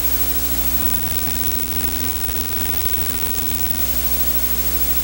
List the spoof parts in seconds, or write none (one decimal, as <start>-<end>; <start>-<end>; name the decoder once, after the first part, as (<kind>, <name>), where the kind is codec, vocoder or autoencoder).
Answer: 0.8-3.8 (vocoder, BigVGAN v2)